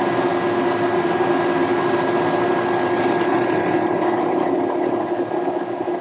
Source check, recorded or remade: recorded